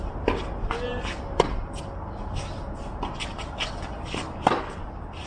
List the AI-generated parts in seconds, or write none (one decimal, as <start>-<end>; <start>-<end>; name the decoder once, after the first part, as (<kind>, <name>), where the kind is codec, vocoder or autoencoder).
none